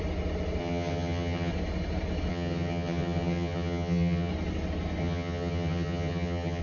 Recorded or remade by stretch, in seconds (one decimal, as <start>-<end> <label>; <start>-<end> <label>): 0.0-0.6 recorded; 0.6-1.5 remade; 1.5-2.3 recorded; 2.3-4.3 remade; 4.3-5.0 recorded; 5.0-6.6 remade